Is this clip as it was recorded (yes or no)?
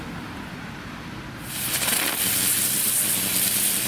no